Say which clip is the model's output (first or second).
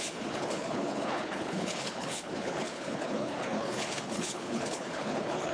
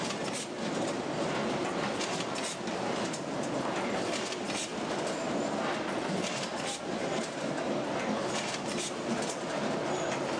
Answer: first